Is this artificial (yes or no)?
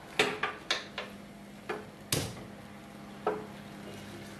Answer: no